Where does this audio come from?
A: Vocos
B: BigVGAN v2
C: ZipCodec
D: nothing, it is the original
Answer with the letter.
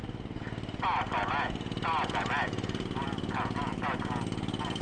D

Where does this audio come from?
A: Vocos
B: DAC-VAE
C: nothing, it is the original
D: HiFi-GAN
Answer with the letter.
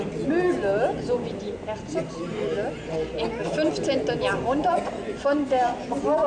C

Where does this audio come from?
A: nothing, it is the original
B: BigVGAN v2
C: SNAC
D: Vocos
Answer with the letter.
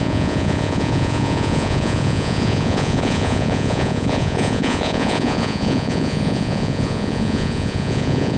D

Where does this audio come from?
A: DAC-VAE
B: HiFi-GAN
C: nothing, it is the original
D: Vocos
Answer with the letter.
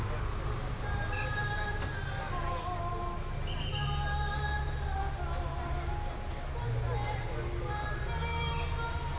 C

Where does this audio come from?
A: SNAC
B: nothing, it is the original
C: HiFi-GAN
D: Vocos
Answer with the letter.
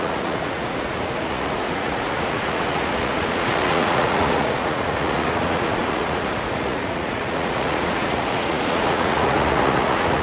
D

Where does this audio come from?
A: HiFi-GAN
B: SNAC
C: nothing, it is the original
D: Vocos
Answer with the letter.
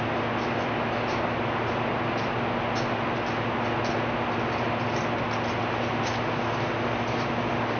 C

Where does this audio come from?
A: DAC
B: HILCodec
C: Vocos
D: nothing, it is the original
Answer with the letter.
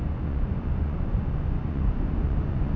C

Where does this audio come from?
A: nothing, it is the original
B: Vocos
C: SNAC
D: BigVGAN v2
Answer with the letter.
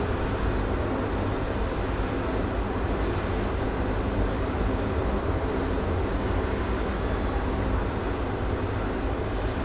A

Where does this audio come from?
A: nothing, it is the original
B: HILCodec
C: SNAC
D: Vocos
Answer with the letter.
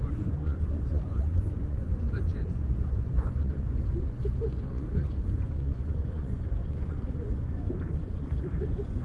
D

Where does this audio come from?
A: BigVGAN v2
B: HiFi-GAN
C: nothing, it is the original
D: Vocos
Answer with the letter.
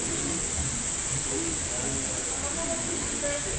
C